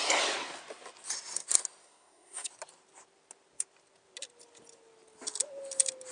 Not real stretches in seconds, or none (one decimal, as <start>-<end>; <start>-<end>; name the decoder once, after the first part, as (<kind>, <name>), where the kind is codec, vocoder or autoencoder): 1.8-2.5 (codec, SNAC)

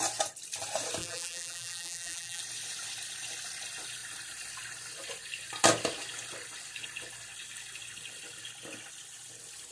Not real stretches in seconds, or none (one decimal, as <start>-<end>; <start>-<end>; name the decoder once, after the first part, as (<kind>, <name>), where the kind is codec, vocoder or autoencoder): 1.0-2.4 (vocoder, BigVGAN v2)

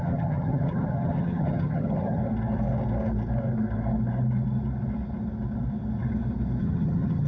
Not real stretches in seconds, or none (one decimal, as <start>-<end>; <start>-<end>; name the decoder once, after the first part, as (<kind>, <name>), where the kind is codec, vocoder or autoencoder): 0.0-2.2 (vocoder, HiFi-GAN); 6.6-7.3

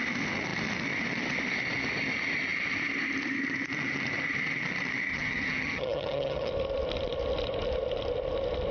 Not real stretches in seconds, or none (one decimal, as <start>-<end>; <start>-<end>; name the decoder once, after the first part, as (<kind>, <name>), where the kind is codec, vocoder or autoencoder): 5.1-6.5 (vocoder, HiFi-GAN)

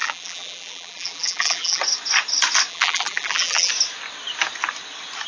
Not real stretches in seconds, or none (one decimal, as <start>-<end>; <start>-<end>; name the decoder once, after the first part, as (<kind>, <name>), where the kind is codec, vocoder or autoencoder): 0.0-1.8 (vocoder, BigVGAN v2); 2.7-3.7

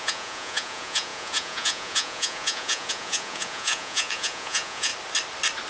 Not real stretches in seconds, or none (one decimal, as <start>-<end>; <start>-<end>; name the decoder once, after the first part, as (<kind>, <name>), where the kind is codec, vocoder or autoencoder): 0.0-4.9 (vocoder, Vocos)

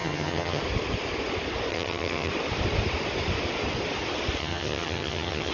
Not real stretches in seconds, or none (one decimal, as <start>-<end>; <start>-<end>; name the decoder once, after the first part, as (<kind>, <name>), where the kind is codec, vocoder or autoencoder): 0.0-0.6 (vocoder, HiFi-GAN); 1.7-2.3; 4.4-5.5